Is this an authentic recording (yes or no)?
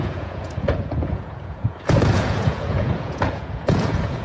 no